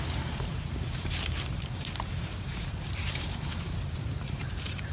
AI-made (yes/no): yes